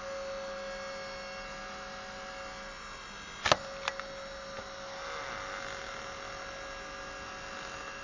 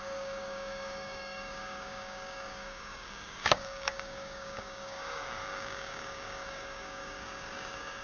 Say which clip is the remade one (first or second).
second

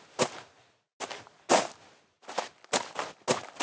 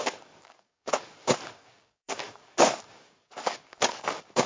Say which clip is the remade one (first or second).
second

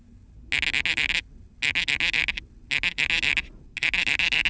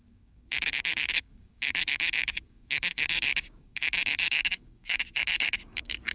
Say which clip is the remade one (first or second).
second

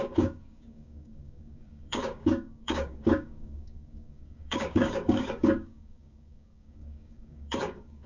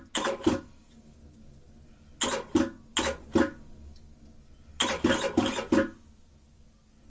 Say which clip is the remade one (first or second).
first